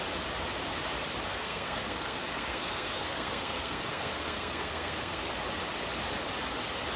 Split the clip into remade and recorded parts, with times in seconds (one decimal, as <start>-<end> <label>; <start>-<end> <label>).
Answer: 0.0-1.3 recorded; 1.3-5.3 remade; 5.3-7.0 recorded